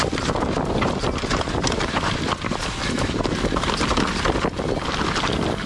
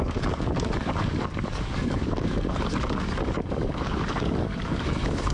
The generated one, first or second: second